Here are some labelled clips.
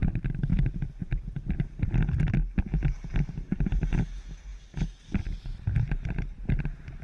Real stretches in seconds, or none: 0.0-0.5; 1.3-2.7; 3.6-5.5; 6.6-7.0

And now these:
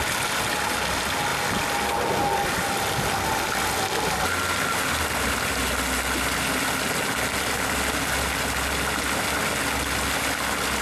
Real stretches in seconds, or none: 0.0-10.8

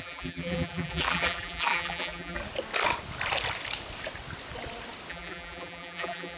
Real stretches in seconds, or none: 2.4-5.1

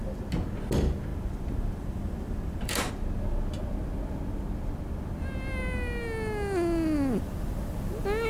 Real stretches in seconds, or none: 0.0-1.1; 2.9-8.3

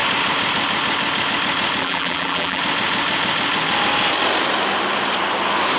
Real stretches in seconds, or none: 0.0-1.8; 2.6-5.8

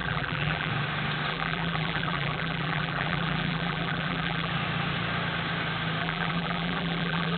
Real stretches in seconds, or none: 0.7-1.3; 4.5-6.0

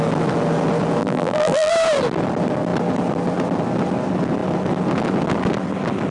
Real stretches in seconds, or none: 0.0-1.0; 1.7-6.1

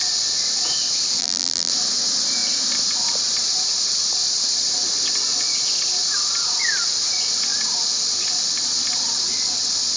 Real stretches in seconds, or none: 0.0-1.2; 1.7-10.0